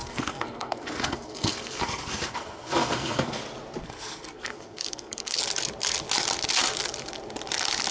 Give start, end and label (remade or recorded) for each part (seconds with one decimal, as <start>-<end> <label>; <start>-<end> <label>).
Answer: 0.0-3.4 remade; 3.4-3.8 recorded; 3.8-5.4 remade; 5.4-7.9 recorded